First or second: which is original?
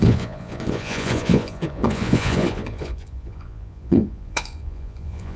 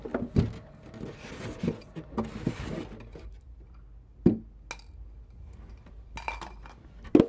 second